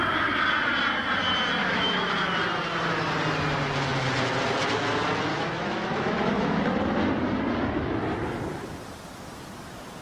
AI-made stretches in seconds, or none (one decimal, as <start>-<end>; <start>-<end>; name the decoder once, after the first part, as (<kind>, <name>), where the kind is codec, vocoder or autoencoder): 1.6-2.1 (autoencoder, DAC-VAE); 5.3-6.6